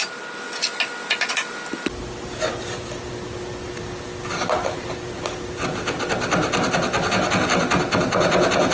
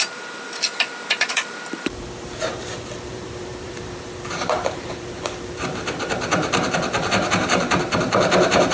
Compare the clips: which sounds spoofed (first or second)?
second